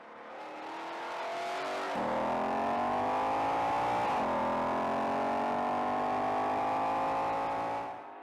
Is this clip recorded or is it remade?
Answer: recorded